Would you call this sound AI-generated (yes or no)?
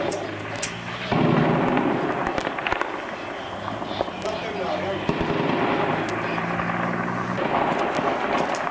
no